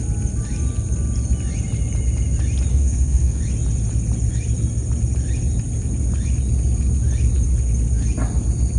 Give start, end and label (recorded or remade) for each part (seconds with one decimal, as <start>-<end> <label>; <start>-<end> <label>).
0.0-2.7 recorded; 2.7-3.4 remade; 3.4-8.8 recorded